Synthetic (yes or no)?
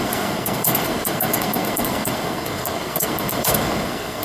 yes